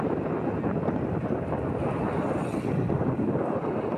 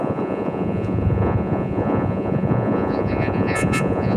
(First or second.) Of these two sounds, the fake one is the second